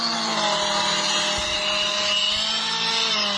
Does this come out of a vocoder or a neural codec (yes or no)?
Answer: no